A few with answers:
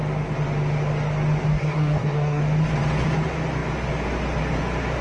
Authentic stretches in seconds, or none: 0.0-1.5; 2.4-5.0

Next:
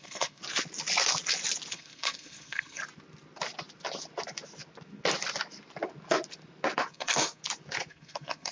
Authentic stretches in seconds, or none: 0.4-1.7; 2.8-6.9; 7.4-7.9

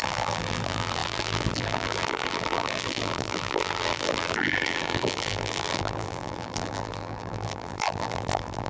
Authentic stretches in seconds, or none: none

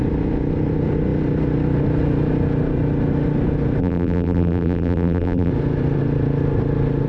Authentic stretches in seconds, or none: 0.0-3.8; 5.5-7.1